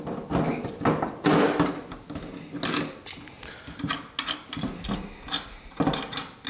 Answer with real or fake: real